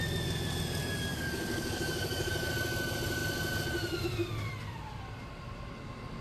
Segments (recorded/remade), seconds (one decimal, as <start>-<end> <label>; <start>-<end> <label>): 0.0-1.1 recorded; 1.1-2.5 remade; 2.5-6.2 recorded